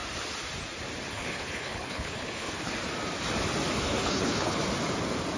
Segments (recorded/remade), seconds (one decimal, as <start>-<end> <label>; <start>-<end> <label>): 0.0-1.1 recorded; 1.1-2.7 remade; 2.7-3.8 recorded; 3.8-4.6 remade; 4.6-5.4 recorded